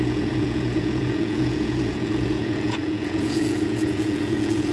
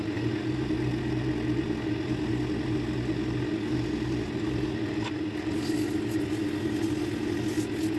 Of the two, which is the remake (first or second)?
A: first